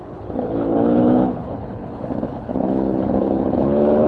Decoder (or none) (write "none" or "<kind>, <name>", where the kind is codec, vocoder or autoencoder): codec, HILCodec